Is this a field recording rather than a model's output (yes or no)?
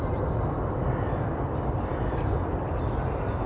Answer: yes